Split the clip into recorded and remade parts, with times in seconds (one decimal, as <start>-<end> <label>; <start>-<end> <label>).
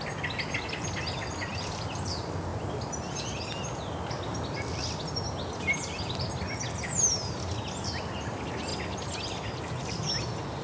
0.0-10.6 recorded